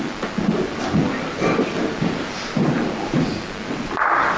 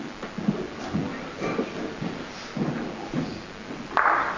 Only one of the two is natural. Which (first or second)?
second